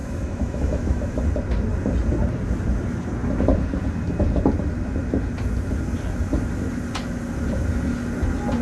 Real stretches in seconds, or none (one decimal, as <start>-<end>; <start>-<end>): 1.2-8.6